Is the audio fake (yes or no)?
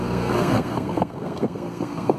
yes